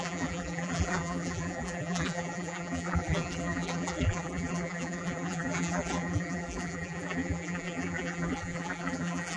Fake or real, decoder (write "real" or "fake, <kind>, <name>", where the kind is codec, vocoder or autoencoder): fake, vocoder, BigVGAN v2